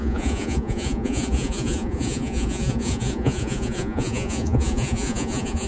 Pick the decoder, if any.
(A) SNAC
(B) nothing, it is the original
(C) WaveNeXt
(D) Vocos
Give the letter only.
D